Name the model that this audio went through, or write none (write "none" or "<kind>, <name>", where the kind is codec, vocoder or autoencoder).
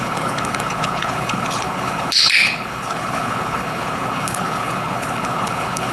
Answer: codec, HILCodec